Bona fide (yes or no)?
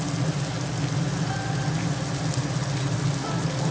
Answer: yes